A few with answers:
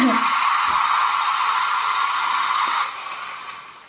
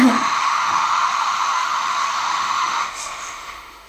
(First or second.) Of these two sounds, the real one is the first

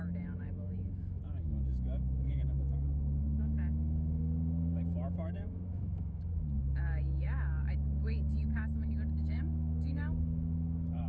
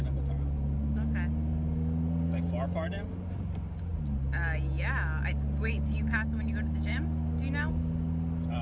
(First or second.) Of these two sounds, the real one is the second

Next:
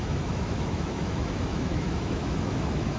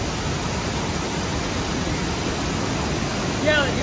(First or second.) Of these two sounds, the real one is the second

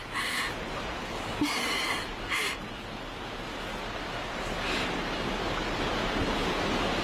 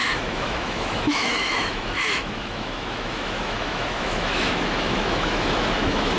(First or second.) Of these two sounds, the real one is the first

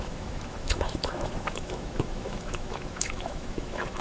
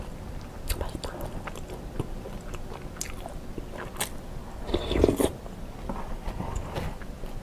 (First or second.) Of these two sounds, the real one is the second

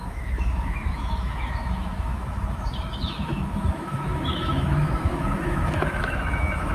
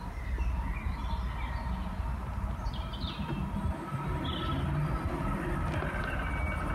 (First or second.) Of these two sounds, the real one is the second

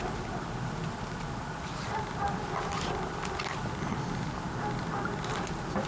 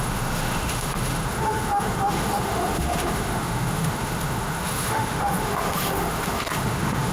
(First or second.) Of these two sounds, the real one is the first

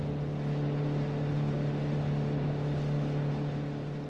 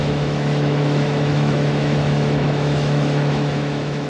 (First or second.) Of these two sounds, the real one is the first